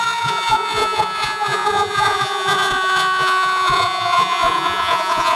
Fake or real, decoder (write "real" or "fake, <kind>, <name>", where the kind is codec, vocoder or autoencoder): fake, vocoder, Vocos